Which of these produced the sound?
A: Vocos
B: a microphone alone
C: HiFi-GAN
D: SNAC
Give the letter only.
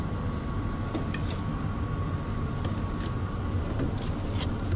B